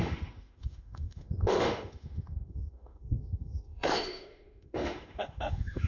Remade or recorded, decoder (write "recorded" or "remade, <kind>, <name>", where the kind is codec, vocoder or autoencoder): remade, autoencoder, DAC-VAE